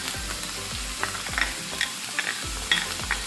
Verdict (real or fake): real